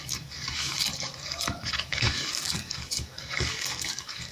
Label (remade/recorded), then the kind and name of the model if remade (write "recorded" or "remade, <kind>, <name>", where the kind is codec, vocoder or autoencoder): remade, codec, DAC